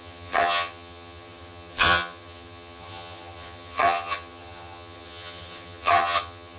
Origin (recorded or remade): remade